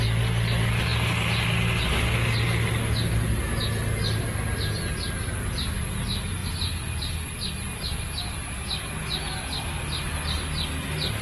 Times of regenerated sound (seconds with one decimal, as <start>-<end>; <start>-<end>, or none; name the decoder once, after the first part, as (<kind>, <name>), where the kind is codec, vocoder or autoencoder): none